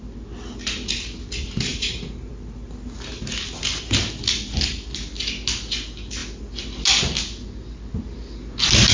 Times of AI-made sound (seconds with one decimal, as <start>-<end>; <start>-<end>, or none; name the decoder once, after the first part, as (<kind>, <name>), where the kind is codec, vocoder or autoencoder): none